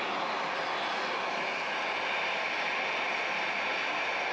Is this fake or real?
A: real